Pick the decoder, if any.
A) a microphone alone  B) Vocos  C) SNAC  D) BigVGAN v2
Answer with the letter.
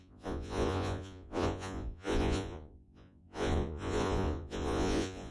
B